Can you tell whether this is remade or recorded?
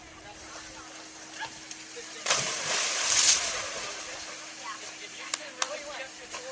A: recorded